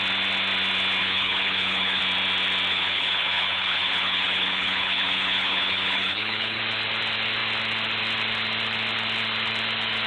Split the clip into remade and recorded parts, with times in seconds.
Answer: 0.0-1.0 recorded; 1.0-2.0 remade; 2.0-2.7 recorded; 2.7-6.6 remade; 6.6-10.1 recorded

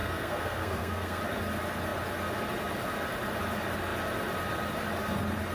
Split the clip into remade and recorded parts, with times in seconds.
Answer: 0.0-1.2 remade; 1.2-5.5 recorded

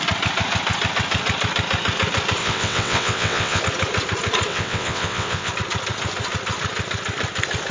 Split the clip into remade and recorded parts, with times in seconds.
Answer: 0.0-2.4 recorded; 2.4-3.6 remade; 3.6-4.5 recorded; 4.5-5.5 remade; 5.5-7.7 recorded

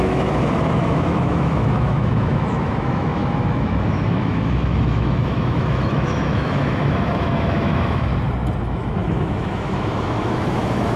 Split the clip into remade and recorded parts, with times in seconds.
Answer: 0.0-8.1 remade; 8.1-8.6 recorded; 8.6-11.0 remade

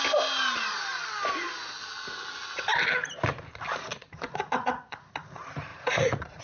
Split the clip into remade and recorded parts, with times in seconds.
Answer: 0.0-3.9 recorded; 3.9-5.1 remade; 5.1-5.7 recorded; 5.7-6.4 remade

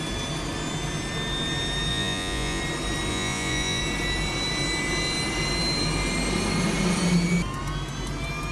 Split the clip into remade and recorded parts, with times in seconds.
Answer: 0.0-1.9 recorded; 1.9-2.6 remade; 2.6-3.1 recorded; 3.1-3.8 remade; 3.8-8.5 recorded

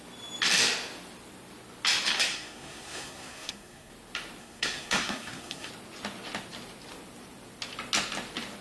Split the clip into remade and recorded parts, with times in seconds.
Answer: 0.0-2.3 recorded; 2.3-3.9 remade; 3.9-4.4 recorded; 4.4-5.7 remade; 5.7-8.6 recorded

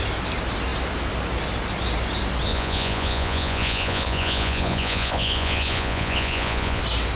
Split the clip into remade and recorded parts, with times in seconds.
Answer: 0.0-2.5 recorded; 2.5-6.8 remade; 6.8-7.2 recorded